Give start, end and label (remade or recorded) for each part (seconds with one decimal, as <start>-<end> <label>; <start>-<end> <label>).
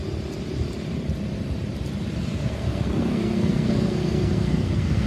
0.0-2.2 recorded; 2.2-5.1 remade